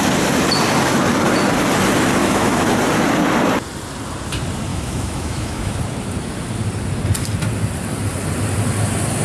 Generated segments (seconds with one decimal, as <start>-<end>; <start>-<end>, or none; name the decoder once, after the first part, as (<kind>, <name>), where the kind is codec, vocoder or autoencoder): 2.2-2.7 (autoencoder, DAC-VAE); 4.7-5.8